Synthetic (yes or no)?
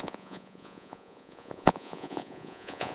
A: yes